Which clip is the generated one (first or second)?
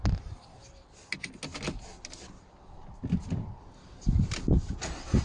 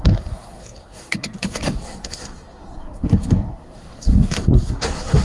second